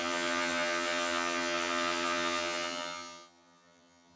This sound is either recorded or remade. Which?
remade